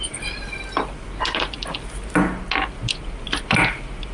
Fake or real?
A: real